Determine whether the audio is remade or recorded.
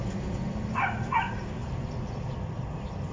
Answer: recorded